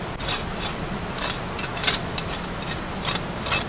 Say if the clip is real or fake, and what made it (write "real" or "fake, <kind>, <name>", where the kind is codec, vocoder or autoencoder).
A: real